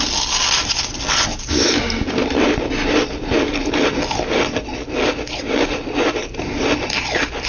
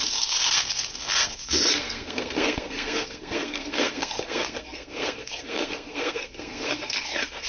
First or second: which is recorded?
first